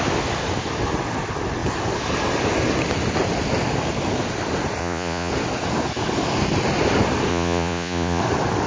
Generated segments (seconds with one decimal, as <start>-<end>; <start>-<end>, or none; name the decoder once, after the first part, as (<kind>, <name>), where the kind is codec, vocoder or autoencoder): 4.8-5.3 (vocoder, Vocos); 7.3-8.2